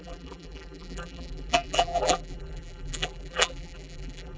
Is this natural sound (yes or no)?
no